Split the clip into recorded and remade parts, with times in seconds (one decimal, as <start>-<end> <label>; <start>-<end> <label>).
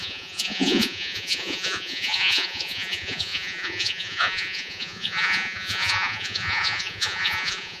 0.0-7.8 remade